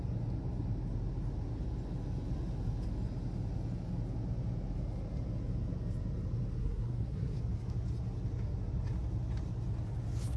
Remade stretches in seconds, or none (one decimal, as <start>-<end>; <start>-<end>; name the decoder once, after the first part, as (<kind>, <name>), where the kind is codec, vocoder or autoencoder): 6.6-7.4 (codec, SNAC)